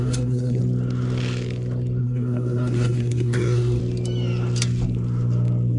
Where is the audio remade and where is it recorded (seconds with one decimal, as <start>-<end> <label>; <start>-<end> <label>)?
0.0-0.6 remade; 0.6-2.0 recorded; 2.0-3.8 remade; 3.8-5.8 recorded